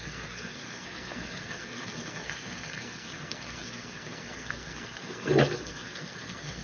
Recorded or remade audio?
remade